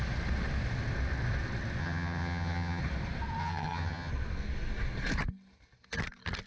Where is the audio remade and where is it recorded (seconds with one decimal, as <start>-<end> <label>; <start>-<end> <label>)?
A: 0.0-1.8 recorded; 1.8-2.8 remade; 2.8-3.4 recorded; 3.4-4.1 remade; 4.1-6.5 recorded